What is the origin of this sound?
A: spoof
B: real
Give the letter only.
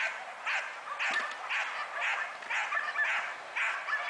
B